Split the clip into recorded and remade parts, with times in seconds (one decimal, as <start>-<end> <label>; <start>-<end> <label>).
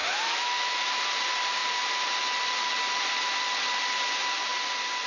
0.0-1.0 remade; 1.0-5.1 recorded